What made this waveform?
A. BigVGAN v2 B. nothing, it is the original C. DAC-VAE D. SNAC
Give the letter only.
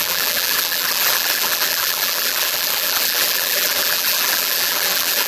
A